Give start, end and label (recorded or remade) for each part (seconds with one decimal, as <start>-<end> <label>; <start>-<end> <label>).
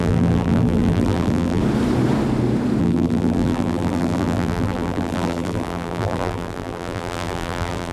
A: 0.0-1.6 remade; 1.6-2.8 recorded; 2.8-7.9 remade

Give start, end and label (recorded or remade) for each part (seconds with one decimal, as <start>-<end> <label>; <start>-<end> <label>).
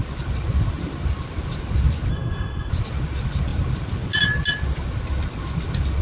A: 0.0-2.1 recorded; 2.1-2.7 remade; 2.7-6.0 recorded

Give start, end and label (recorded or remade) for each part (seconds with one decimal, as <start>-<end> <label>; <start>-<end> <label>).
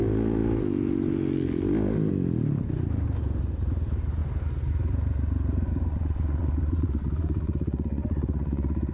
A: 0.0-5.9 recorded; 5.9-8.9 remade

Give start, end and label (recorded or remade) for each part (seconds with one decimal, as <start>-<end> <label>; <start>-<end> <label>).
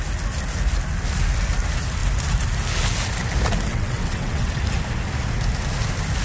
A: 0.0-3.7 recorded; 3.7-4.6 remade; 4.6-6.2 recorded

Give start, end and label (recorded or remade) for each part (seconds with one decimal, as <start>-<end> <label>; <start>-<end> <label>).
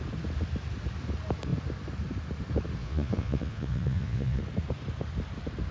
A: 0.0-2.8 recorded; 2.8-4.4 remade; 4.4-5.7 recorded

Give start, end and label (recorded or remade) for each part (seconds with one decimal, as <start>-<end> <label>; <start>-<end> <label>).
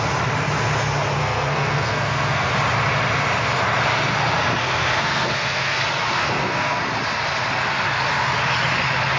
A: 0.0-1.2 recorded; 1.2-2.5 remade; 2.5-4.6 recorded; 4.6-5.8 remade; 5.8-6.2 recorded; 6.2-6.8 remade; 6.8-9.2 recorded